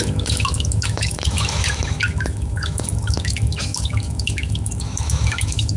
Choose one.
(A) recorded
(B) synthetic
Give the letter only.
B